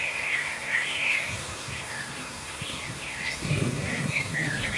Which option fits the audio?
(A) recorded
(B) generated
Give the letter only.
B